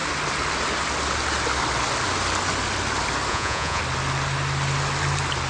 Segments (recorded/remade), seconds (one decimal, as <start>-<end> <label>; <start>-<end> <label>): 0.0-3.3 recorded; 3.3-3.8 remade; 3.8-5.5 recorded